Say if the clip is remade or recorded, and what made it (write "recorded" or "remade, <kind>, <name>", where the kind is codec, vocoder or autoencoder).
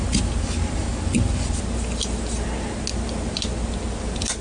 recorded